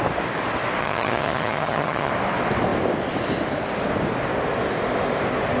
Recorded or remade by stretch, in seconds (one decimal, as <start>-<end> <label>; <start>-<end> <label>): 0.0-0.8 recorded; 0.8-2.1 remade; 2.1-5.6 recorded